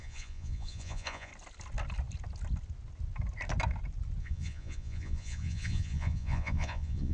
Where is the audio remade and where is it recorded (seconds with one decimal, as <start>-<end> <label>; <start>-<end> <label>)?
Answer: 0.0-1.3 remade; 1.3-4.2 recorded; 4.2-7.1 remade